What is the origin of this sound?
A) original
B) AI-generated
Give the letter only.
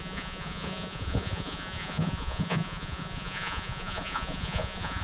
B